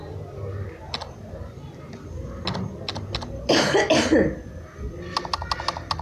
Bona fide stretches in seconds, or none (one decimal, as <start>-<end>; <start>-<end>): 0.0-6.0